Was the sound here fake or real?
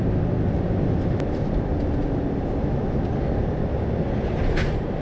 real